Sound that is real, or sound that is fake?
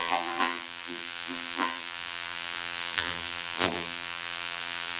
fake